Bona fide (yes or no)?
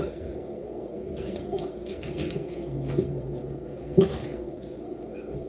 no